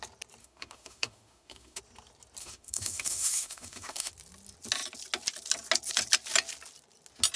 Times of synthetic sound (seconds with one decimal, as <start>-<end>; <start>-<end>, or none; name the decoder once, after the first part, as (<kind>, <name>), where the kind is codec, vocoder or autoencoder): 0.4-1.8 (autoencoder, DAC-VAE); 2.4-4.1